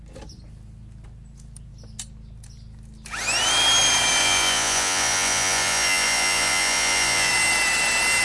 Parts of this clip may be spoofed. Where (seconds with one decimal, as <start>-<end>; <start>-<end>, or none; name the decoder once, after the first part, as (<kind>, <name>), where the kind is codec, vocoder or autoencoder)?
4.2-7.3 (vocoder, Vocos)